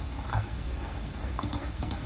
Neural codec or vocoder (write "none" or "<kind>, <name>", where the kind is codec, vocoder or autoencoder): codec, SNAC